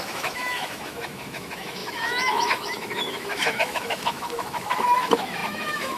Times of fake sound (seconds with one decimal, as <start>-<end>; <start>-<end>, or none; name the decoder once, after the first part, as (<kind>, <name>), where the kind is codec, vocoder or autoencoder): 0.0-6.0 (autoencoder, DAC-VAE)